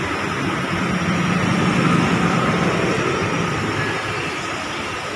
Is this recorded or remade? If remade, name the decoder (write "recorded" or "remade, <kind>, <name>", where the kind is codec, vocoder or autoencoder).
recorded